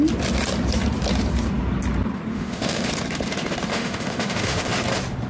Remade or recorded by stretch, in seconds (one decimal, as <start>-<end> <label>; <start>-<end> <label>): 0.0-2.3 recorded; 2.3-2.9 remade; 2.9-3.7 recorded; 3.7-4.7 remade; 4.7-5.3 recorded